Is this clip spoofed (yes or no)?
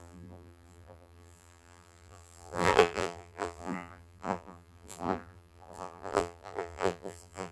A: yes